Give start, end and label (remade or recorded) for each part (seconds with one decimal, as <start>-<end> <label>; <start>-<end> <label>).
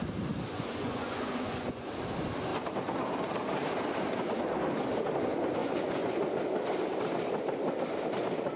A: 0.0-0.5 recorded; 0.5-1.9 remade; 1.9-5.6 recorded; 5.6-6.2 remade; 6.2-8.6 recorded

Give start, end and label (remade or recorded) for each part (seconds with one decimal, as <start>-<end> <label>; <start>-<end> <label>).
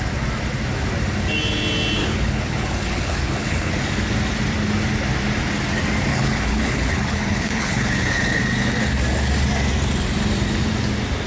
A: 0.0-2.0 recorded; 2.0-3.7 remade; 3.7-6.1 recorded; 6.1-8.4 remade; 8.4-11.3 recorded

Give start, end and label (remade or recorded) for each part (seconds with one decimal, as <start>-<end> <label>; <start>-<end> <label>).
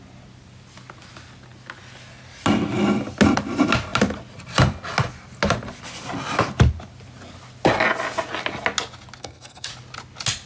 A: 0.0-9.2 recorded; 9.2-9.7 remade; 9.7-10.5 recorded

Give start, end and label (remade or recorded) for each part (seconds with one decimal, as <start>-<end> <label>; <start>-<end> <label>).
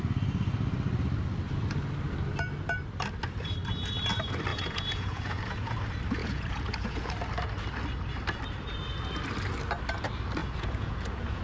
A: 0.0-4.5 recorded; 4.5-5.7 remade; 5.7-6.2 recorded; 6.2-7.1 remade; 7.1-10.4 recorded; 10.4-11.4 remade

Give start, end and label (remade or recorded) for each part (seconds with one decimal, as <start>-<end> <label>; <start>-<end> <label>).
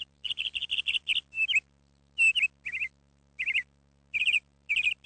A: 0.0-1.1 remade; 1.1-4.2 recorded; 4.2-5.1 remade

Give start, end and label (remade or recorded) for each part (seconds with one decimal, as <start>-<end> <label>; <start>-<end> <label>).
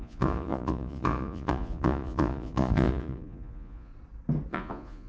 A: 0.0-3.9 remade; 3.9-4.5 recorded; 4.5-5.1 remade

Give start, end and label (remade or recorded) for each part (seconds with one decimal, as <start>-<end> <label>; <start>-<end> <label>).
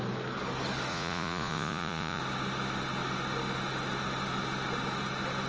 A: 0.0-0.9 recorded; 0.9-2.2 remade; 2.2-5.5 recorded